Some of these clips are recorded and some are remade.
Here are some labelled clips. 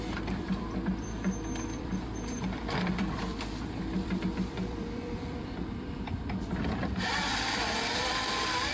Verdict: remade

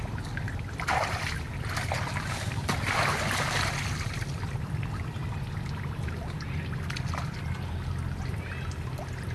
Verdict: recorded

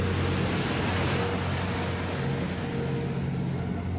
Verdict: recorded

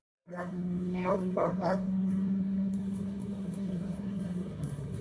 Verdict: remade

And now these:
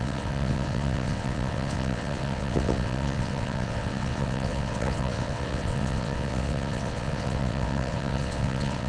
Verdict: remade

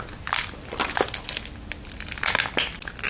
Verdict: recorded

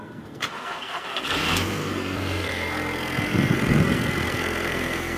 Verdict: remade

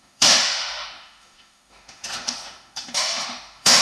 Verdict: remade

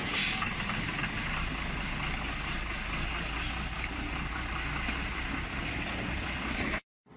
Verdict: recorded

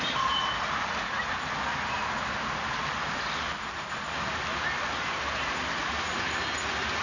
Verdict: recorded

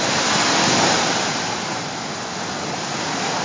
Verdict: recorded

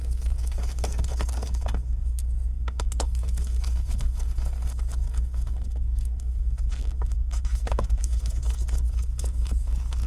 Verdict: remade